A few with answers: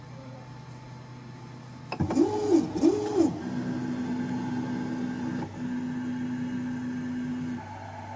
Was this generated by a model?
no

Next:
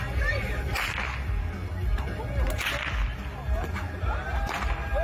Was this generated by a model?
no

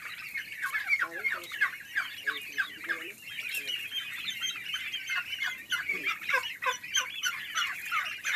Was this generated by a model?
no